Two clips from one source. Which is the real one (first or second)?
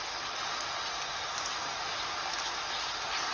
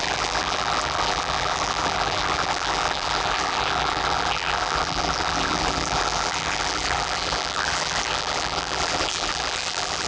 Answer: first